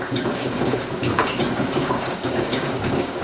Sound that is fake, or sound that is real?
fake